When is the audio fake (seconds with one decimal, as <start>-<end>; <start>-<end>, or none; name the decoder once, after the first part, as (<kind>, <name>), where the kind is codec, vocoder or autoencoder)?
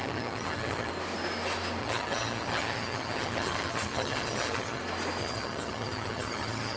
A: 0.0-0.9 (vocoder, HiFi-GAN); 1.8-4.8; 5.2-6.8